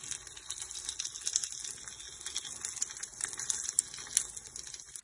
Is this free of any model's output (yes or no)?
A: yes